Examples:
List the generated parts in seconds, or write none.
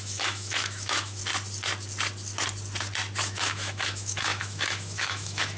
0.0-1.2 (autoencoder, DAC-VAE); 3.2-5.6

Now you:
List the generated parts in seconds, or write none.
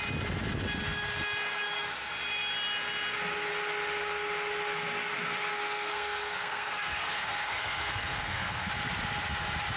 5.5-8.7 (codec, SNAC)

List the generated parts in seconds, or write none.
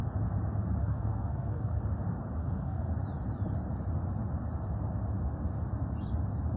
0.8-1.8 (codec, SNAC); 2.4-2.9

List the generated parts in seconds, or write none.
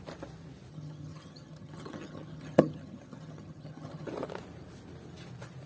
0.7-4.1 (vocoder, HiFi-GAN)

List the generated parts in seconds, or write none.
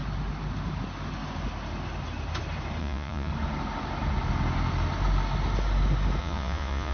2.8-3.3 (vocoder, Vocos); 6.2-6.9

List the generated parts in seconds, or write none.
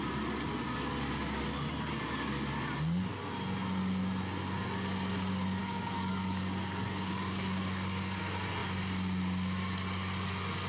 5.6-8.2 (codec, DAC)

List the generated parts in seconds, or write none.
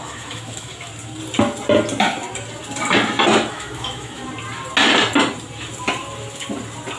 0.0-0.9 (autoencoder, DAC-VAE); 3.5-4.2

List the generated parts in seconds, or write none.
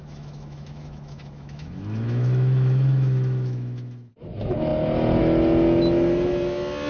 0.0-4.1 (autoencoder, DAC-VAE)